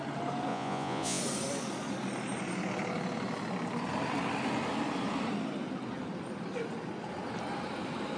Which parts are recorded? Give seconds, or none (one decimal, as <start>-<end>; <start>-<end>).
0.0-0.5; 1.2-8.2

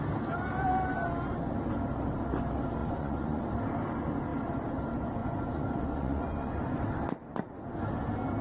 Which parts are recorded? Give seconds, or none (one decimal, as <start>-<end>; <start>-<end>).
0.0-2.8; 3.4-5.2; 6.8-8.4

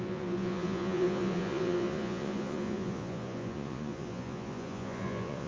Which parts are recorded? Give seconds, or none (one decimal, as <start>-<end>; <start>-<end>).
none